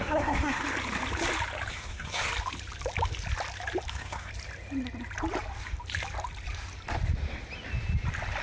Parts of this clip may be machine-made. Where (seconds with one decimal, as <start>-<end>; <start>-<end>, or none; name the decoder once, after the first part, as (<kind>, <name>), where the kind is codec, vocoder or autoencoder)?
0.0-0.6 (codec, SNAC); 1.7-2.3; 3.9-4.3